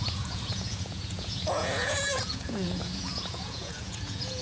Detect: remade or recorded remade